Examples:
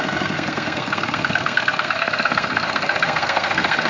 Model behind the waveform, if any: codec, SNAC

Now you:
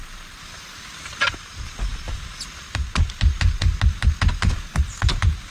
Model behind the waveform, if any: none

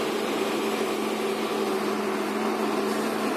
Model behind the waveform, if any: none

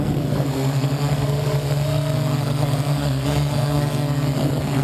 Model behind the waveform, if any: codec, SNAC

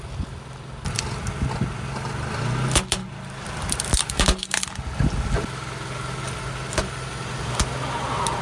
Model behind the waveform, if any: none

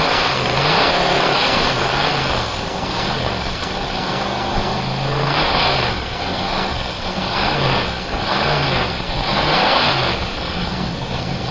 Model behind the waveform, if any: codec, SNAC